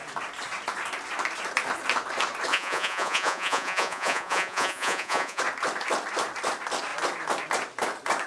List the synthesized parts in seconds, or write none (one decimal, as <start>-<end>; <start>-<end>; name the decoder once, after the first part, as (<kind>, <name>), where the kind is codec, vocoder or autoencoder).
2.5-5.4 (vocoder, Vocos)